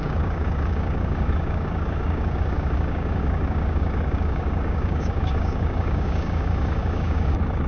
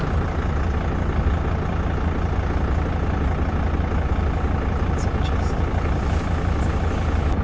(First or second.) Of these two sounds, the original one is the second